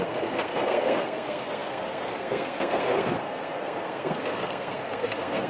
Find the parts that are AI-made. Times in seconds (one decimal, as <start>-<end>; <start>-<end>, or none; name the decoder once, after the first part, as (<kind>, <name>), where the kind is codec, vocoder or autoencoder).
0.0-5.5 (codec, SNAC)